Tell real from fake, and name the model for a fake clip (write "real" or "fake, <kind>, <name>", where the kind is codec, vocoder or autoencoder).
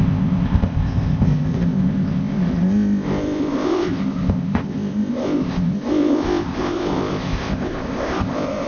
fake, codec, ZipCodec